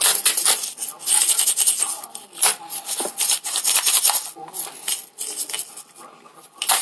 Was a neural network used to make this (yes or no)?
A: no